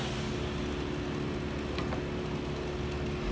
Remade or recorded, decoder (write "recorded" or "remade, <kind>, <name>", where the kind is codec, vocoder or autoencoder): recorded